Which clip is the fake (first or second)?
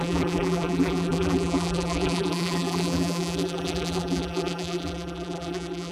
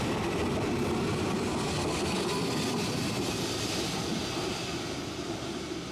first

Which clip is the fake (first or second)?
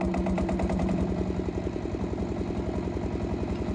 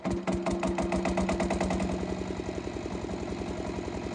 first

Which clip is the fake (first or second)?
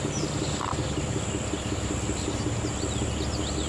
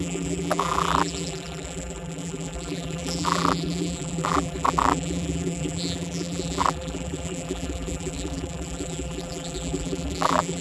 second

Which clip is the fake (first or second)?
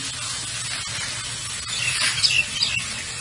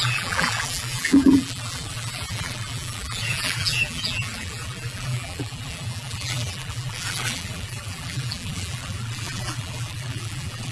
second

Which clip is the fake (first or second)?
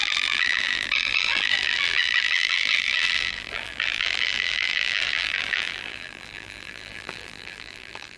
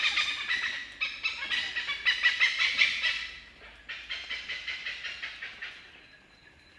first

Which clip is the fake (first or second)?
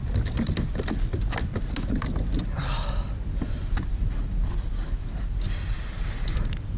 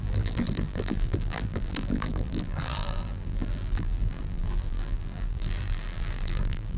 second